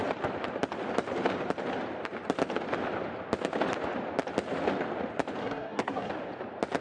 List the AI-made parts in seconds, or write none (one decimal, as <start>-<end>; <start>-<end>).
5.4-6.1